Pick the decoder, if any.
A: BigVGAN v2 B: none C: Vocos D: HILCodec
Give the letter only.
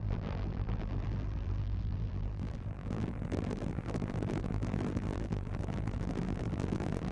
A